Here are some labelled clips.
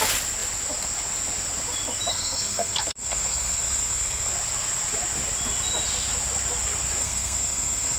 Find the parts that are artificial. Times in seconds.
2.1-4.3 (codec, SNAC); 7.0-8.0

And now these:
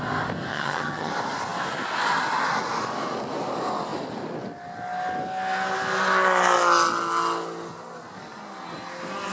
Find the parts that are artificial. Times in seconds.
0.5-1.1 (vocoder, HiFi-GAN)

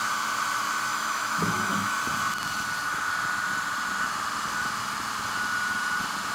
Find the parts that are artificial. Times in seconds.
0.9-2.0 (autoencoder, DAC-VAE)

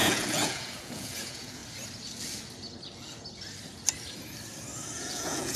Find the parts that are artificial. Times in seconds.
0.0-1.6 (vocoder, Vocos); 5.0-5.6

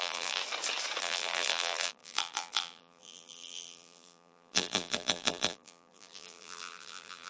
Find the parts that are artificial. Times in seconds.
0.0-0.4 (vocoder, BigVGAN v2); 1.0-7.3

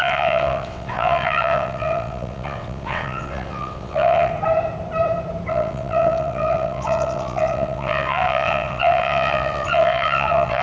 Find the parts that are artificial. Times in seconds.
0.0-4.3 (vocoder, WaveNeXt); 5.5-10.6

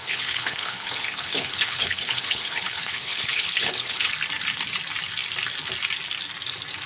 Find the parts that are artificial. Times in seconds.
0.0-4.1 (codec, HILCodec)

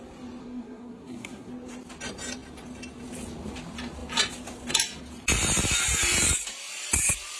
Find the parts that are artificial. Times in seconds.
0.4-1.5 (codec, SNAC)